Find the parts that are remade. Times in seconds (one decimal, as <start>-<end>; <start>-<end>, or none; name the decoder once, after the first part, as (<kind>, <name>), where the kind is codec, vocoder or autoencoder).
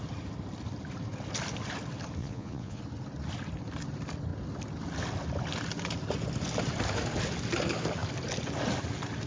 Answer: 2.2-2.8 (vocoder, Vocos)